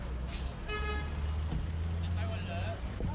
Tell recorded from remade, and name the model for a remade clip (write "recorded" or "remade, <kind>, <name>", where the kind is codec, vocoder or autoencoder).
recorded